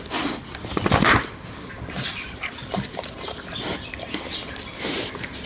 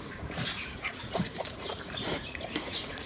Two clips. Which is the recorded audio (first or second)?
first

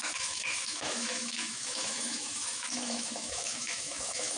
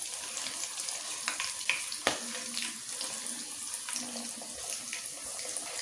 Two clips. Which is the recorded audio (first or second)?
second